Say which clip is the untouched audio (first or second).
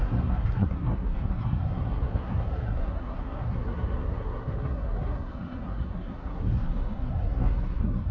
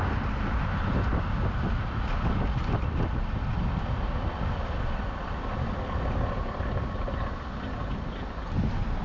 second